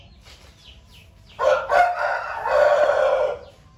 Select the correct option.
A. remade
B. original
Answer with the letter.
B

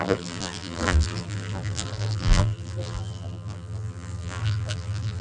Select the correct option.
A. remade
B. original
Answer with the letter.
A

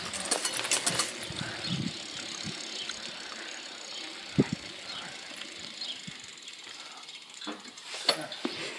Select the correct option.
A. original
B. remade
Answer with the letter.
A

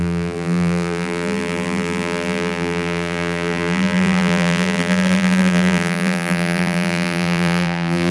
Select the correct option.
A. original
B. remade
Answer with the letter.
B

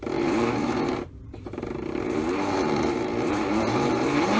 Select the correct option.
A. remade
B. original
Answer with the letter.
A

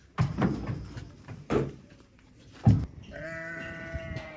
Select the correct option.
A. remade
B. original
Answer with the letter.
A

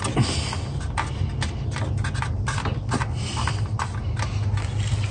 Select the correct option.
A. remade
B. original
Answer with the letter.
B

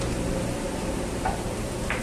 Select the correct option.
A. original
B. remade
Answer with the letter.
B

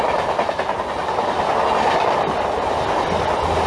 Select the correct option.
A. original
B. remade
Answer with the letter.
A